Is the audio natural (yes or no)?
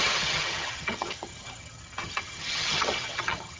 no